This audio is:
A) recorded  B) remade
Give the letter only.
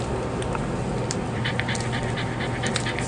A